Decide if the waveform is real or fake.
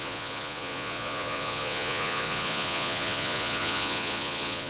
fake